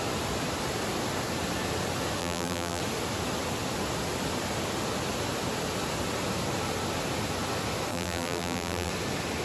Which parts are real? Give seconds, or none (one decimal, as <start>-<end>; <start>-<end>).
0.0-2.2; 2.8-7.9; 8.9-9.4